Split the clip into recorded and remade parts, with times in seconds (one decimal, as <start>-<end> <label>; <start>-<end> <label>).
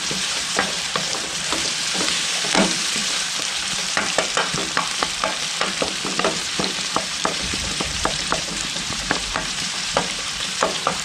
0.0-4.6 remade; 4.6-6.2 recorded; 6.2-11.0 remade